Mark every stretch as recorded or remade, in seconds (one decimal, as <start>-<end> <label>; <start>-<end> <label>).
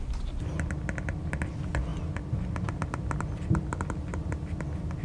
0.0-5.0 recorded